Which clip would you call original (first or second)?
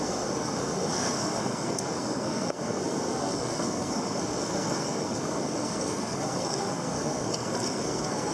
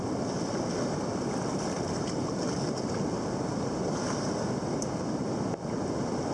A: second